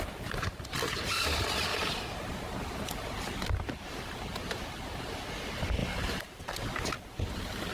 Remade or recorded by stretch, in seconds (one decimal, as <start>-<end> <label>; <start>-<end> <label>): 0.0-1.7 remade; 1.7-2.6 recorded; 2.6-5.8 remade; 5.8-7.2 recorded; 7.2-7.7 remade